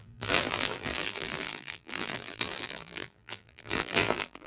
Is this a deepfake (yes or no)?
yes